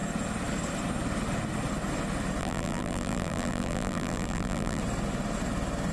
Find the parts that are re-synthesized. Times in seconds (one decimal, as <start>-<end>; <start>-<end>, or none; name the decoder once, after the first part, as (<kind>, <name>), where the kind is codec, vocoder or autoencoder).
2.4-4.8 (vocoder, BigVGAN v2)